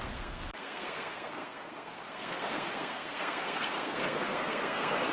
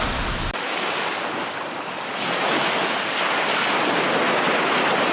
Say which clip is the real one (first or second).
second